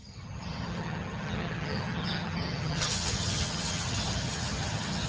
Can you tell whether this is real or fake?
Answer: fake